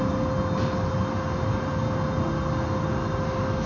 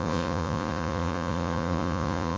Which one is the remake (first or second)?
second